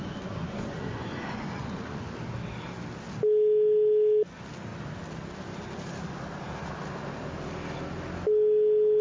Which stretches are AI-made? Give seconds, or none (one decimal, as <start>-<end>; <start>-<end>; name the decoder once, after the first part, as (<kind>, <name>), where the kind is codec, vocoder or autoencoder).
0.0-2.0 (vocoder, Vocos)